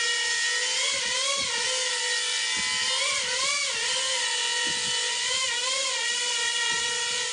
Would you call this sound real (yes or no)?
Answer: yes